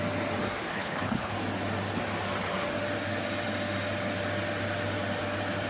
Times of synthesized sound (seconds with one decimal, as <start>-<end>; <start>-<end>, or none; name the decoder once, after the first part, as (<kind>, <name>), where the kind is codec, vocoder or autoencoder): 0.7-1.3 (codec, HILCodec)